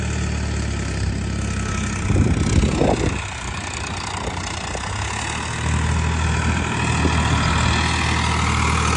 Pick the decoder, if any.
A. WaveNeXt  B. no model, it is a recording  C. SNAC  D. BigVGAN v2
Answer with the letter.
B